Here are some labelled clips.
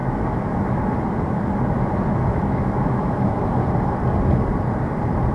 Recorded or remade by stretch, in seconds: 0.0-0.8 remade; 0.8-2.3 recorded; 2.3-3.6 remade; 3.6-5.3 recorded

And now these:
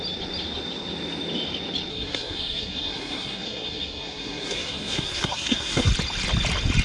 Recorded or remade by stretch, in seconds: 0.0-1.9 recorded; 1.9-5.9 remade; 5.9-6.8 recorded

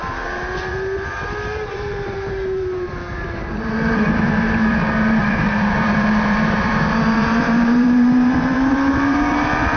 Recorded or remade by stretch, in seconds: 0.0-9.8 remade

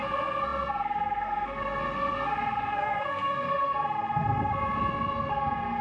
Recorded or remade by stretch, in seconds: 0.0-4.5 remade; 4.5-5.3 recorded; 5.3-5.8 remade

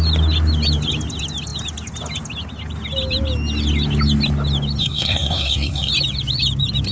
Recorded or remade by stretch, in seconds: 0.0-4.8 recorded; 4.8-5.9 remade; 5.9-6.9 recorded

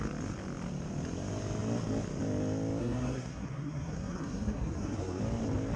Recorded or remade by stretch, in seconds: 0.0-2.8 recorded; 2.8-5.2 remade; 5.2-5.8 recorded

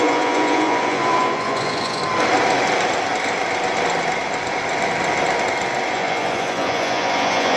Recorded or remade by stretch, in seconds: 0.0-2.0 remade; 2.0-5.9 recorded; 5.9-7.6 remade

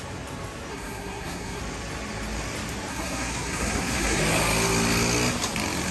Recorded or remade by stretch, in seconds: 0.0-0.7 recorded; 0.7-1.6 remade; 1.6-2.9 recorded; 2.9-4.2 remade; 4.2-5.9 recorded